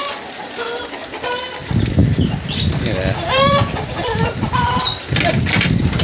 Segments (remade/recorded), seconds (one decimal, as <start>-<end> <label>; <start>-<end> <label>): 0.0-0.5 recorded; 0.5-1.0 remade; 1.0-1.5 recorded; 1.5-6.0 remade